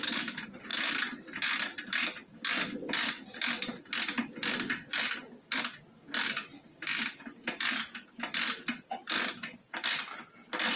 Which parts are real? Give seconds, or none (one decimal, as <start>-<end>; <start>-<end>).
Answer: 0.0-10.8